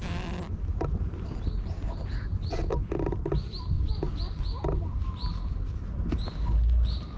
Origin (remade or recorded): recorded